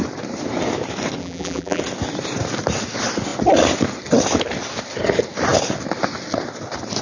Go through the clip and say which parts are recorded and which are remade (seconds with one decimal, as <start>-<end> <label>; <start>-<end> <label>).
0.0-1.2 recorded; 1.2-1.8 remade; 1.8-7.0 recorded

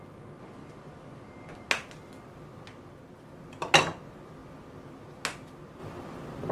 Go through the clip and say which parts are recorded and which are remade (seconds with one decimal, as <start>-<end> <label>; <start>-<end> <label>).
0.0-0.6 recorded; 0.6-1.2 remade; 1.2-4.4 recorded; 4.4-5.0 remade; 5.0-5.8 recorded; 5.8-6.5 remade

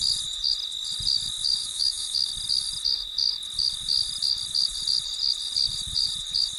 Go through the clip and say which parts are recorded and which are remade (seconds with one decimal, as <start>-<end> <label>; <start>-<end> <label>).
0.0-1.6 recorded; 1.6-2.3 remade; 2.3-6.6 recorded

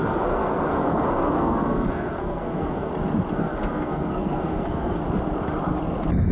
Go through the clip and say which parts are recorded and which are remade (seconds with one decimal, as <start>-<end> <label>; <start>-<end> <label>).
0.0-2.9 remade; 2.9-3.3 recorded; 3.3-5.0 remade; 5.0-6.3 recorded

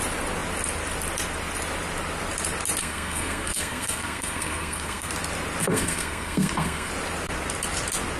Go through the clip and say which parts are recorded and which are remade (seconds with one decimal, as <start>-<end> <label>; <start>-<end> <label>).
0.0-2.8 recorded; 2.8-5.1 remade; 5.1-5.6 recorded; 5.6-6.9 remade; 6.9-8.2 recorded